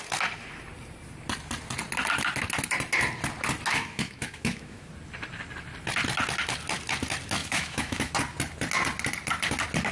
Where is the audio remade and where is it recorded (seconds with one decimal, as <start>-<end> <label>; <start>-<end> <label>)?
0.0-3.7 recorded; 3.7-4.9 remade; 4.9-7.4 recorded; 7.4-8.1 remade; 8.1-9.9 recorded